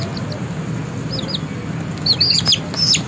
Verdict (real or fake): real